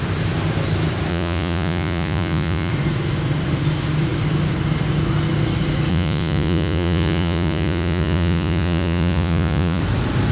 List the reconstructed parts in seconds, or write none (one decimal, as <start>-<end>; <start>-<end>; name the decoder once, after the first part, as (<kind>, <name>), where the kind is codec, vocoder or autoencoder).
1.1-2.7 (vocoder, Vocos); 5.9-9.8